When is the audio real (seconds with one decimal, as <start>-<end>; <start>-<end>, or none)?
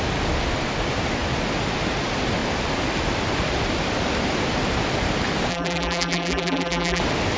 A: 0.0-5.5; 7.0-7.4